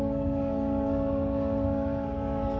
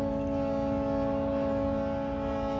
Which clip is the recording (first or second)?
second